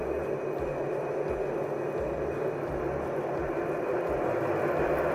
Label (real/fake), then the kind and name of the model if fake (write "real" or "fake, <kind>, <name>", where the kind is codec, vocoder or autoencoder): real